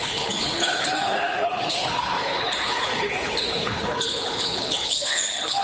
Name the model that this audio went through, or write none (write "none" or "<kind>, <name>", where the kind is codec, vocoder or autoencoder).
codec, HILCodec